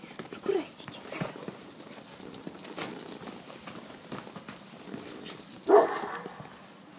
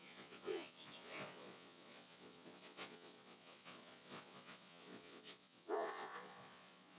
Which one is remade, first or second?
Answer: second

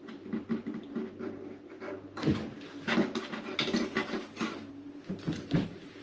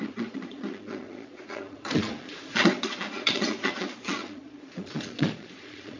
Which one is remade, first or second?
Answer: second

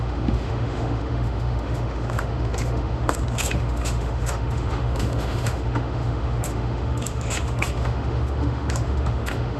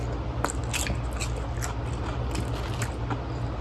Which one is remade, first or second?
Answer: first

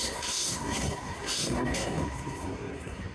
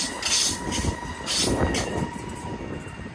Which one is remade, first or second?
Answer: first